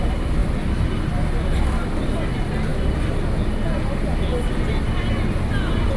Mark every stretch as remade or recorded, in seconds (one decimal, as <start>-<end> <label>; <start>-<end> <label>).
0.0-6.0 recorded